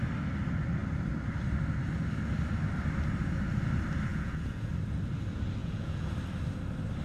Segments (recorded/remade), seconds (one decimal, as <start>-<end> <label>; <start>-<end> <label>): 0.0-4.1 recorded; 4.1-4.7 remade; 4.7-5.6 recorded; 5.6-6.1 remade; 6.1-7.0 recorded